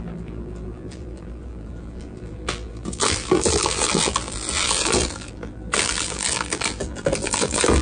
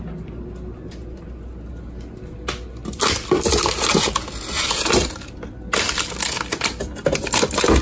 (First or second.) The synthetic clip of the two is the first